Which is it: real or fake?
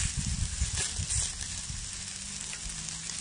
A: real